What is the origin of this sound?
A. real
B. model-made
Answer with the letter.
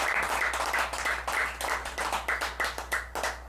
A